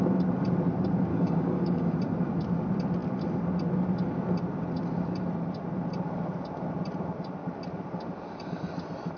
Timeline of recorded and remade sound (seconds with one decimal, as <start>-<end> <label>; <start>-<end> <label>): 0.0-1.1 recorded; 1.1-1.9 remade; 1.9-9.2 recorded